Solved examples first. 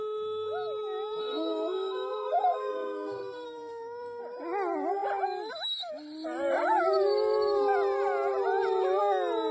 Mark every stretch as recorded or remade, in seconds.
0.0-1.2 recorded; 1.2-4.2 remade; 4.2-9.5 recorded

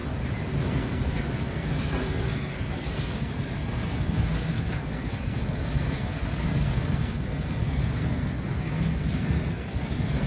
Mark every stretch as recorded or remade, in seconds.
0.0-0.6 recorded; 0.6-10.3 remade

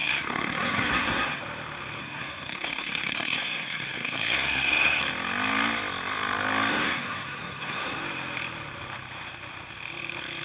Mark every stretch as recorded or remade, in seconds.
0.0-1.4 remade; 1.4-2.0 recorded; 2.0-5.0 remade; 5.0-6.7 recorded; 6.7-8.0 remade; 8.0-10.4 recorded

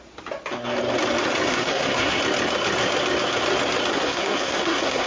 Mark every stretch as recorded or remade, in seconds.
0.0-1.5 recorded; 1.5-2.2 remade; 2.2-3.9 recorded; 3.9-5.1 remade

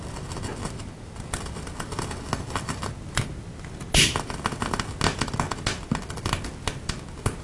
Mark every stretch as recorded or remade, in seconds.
0.0-7.4 recorded

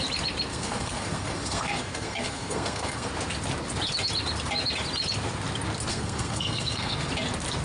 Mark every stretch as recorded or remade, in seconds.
0.0-0.5 recorded; 0.5-3.1 remade; 3.1-5.9 recorded; 5.9-7.1 remade; 7.1-7.6 recorded